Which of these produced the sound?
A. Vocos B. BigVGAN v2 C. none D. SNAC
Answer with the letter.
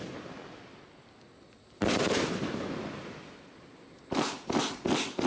C